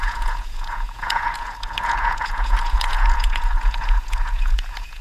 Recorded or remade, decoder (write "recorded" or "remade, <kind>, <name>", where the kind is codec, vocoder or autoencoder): remade, vocoder, Vocos